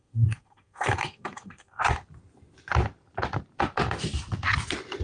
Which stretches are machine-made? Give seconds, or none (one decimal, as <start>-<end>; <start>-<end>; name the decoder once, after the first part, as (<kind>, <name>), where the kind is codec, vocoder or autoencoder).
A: 0.0-1.8 (codec, SNAC)